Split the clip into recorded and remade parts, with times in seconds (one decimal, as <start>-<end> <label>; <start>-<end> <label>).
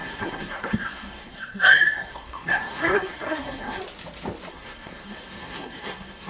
0.0-3.8 remade; 3.8-4.5 recorded; 4.5-6.3 remade